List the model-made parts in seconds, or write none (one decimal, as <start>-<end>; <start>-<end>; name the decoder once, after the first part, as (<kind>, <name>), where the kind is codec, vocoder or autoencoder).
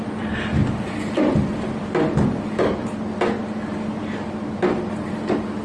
none